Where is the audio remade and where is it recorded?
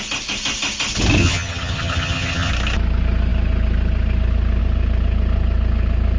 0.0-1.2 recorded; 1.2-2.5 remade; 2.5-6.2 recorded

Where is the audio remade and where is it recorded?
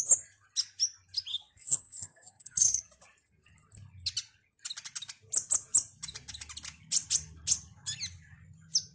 0.0-1.3 recorded; 1.3-2.8 remade; 2.8-8.9 recorded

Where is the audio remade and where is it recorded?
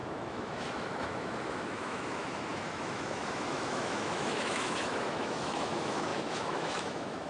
0.0-7.3 remade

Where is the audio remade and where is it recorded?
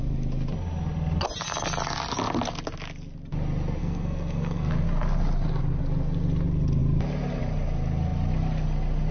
0.0-3.8 recorded; 3.8-4.7 remade; 4.7-9.1 recorded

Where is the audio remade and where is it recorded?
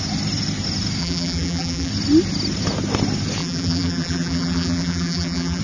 0.0-1.0 recorded; 1.0-1.9 remade; 1.9-3.4 recorded; 3.4-5.6 remade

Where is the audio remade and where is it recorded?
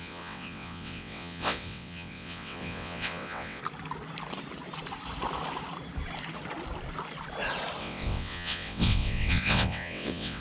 0.0-3.6 remade; 3.6-7.8 recorded; 7.8-10.4 remade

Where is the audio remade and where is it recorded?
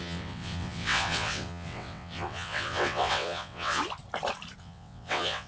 0.0-3.8 remade; 3.8-4.6 recorded; 4.6-5.5 remade